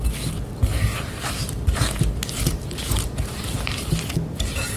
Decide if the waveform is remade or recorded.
recorded